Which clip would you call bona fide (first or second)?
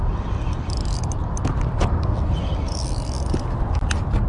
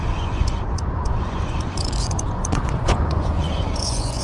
first